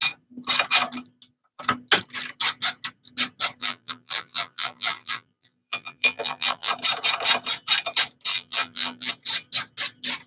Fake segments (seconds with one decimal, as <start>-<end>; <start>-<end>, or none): 3.6-6.7; 8.3-9.1

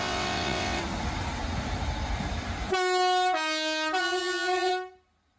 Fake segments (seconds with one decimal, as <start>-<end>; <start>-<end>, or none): 0.0-0.8; 4.0-4.7

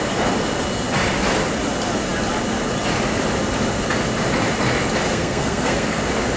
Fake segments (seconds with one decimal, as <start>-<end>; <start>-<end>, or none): 5.1-6.0

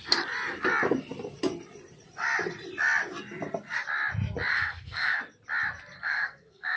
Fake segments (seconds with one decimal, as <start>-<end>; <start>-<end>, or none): 4.5-5.2; 6.0-6.8

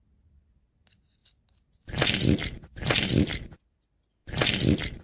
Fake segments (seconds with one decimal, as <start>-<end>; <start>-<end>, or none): none